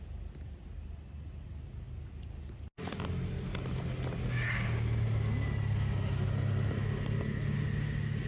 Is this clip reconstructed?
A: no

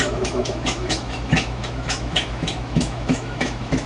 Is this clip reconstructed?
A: yes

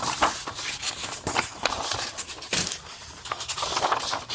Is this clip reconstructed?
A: no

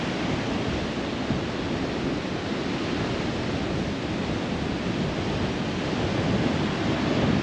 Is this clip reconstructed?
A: no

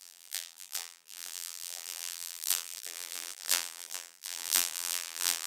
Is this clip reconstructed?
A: yes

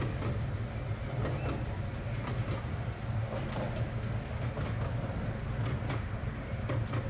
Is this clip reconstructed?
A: no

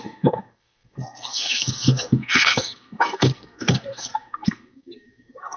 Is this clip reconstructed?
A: yes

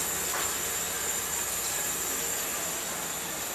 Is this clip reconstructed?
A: no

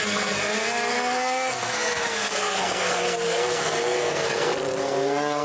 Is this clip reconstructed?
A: yes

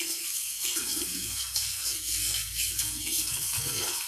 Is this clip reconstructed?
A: yes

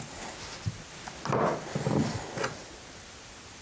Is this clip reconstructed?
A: no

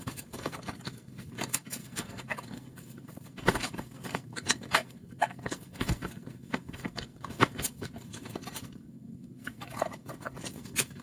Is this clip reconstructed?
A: yes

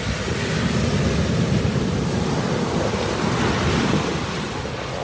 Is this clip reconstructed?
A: no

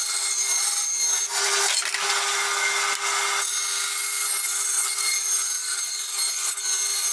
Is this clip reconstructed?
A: no